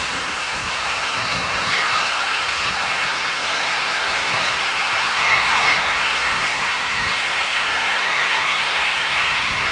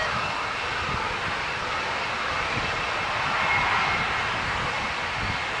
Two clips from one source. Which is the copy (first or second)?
first